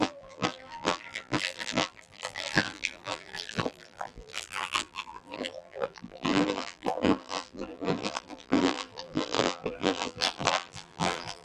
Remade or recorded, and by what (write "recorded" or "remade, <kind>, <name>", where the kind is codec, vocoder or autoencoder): remade, vocoder, BigVGAN v2